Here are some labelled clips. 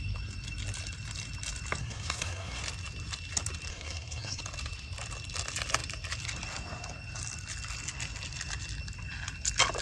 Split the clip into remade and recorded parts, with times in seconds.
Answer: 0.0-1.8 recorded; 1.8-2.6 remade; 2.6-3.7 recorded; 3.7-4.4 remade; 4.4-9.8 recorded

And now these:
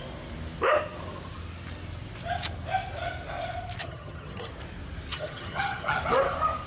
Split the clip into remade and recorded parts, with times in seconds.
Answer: 0.0-3.8 recorded; 3.8-4.5 remade; 4.5-5.1 recorded; 5.1-6.0 remade; 6.0-6.7 recorded

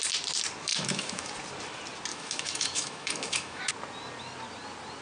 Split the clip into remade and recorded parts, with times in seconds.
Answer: 0.0-0.7 recorded; 0.7-1.3 remade; 1.3-2.1 recorded; 2.1-3.6 remade; 3.6-5.0 recorded

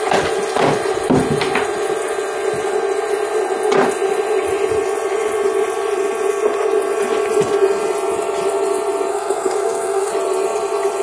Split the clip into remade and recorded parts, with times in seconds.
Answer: 0.0-9.1 recorded; 9.1-10.1 remade; 10.1-11.0 recorded

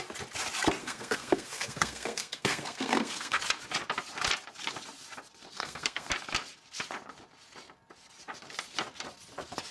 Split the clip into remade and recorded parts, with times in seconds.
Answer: 0.0-0.8 recorded; 0.8-3.4 remade; 3.4-5.5 recorded; 5.5-6.1 remade; 6.1-9.7 recorded

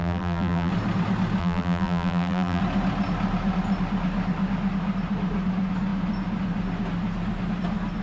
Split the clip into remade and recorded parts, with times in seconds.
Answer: 0.0-0.7 remade; 0.7-1.4 recorded; 1.4-2.6 remade; 2.6-8.0 recorded